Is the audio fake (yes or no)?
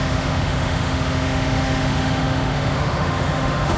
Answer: yes